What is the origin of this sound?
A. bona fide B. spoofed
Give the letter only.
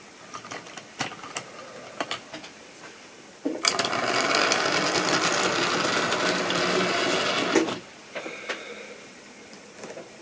A